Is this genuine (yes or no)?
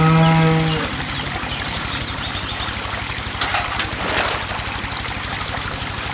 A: yes